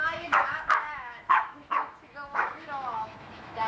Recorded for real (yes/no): no